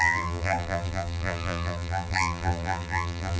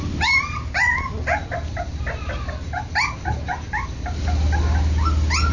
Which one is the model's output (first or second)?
first